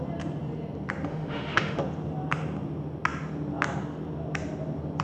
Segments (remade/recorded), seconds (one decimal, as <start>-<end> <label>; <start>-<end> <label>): 0.0-1.1 recorded; 1.1-1.8 remade; 1.8-5.0 recorded